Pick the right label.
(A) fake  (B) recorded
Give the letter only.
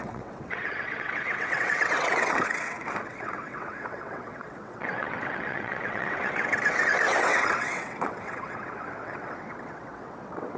A